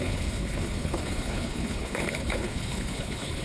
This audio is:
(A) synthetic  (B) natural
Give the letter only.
A